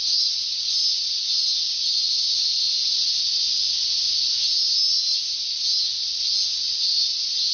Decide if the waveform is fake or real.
real